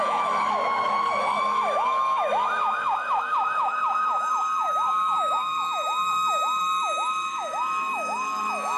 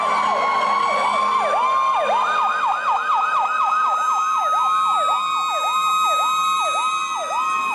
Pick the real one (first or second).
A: second